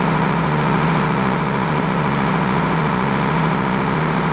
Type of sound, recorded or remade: remade